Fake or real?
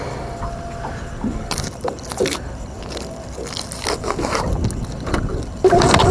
real